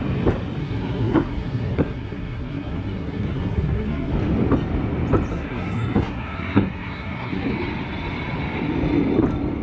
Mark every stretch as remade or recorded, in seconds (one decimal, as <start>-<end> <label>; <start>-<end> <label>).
0.0-0.6 recorded; 0.6-4.1 remade; 4.1-5.3 recorded; 5.3-7.5 remade; 7.5-9.6 recorded